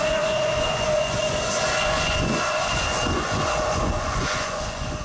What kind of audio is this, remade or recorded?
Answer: remade